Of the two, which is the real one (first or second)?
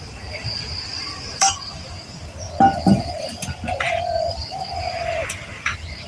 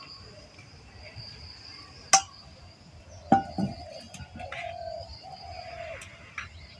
second